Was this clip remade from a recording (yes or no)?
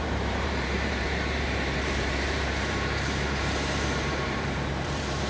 yes